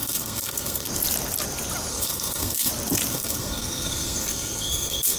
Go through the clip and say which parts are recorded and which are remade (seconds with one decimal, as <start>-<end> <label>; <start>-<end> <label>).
0.0-0.9 remade; 0.9-1.9 recorded; 1.9-2.7 remade; 2.7-3.1 recorded; 3.1-5.2 remade